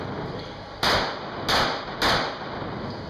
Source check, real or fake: real